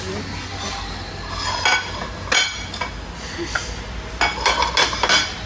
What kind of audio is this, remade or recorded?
recorded